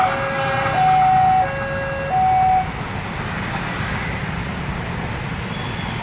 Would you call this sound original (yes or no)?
yes